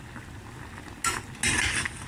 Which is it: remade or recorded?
recorded